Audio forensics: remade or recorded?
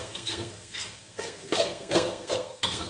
remade